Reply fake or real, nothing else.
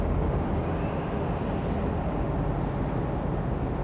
real